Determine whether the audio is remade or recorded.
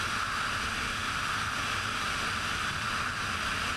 recorded